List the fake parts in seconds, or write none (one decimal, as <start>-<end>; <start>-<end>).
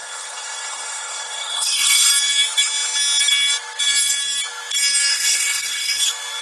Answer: 0.0-2.1; 5.1-6.0